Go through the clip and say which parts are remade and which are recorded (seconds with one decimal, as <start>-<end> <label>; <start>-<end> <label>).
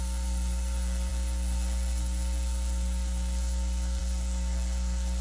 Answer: 0.0-5.2 remade